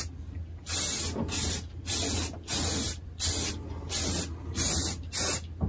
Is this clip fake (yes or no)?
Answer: no